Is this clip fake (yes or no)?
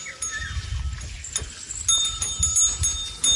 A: no